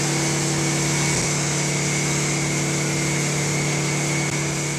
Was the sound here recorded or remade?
recorded